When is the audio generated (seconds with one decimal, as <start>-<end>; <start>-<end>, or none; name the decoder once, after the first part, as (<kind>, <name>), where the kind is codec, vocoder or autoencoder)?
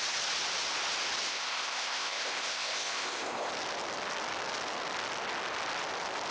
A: 1.3-3.5 (codec, ZipCodec)